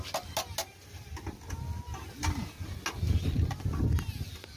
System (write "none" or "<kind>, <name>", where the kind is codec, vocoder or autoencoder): none